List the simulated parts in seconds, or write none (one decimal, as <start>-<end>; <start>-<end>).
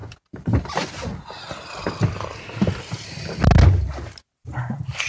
none